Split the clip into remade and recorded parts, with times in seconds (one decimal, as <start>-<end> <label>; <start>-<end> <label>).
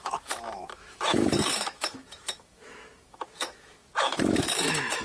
0.0-5.0 remade